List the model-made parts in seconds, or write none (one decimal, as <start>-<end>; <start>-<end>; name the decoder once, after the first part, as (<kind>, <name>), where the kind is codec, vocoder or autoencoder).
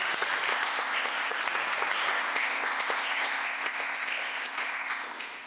0.5-1.4 (codec, ZipCodec); 2.1-5.5